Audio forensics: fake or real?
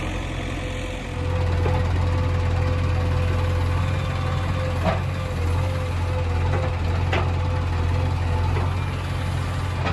real